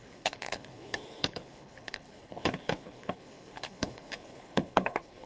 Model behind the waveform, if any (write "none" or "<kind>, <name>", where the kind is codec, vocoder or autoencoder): codec, HILCodec